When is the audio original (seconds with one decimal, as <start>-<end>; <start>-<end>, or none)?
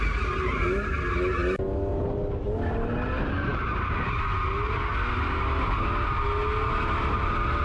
0.0-7.6